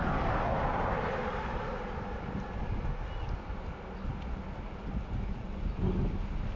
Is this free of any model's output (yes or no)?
yes